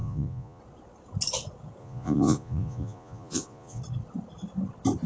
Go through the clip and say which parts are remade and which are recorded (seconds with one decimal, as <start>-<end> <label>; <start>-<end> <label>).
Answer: 0.0-0.6 remade; 0.6-1.8 recorded; 1.8-3.8 remade; 3.8-5.1 recorded